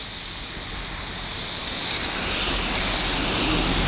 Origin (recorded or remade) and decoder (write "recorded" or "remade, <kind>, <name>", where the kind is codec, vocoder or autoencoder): recorded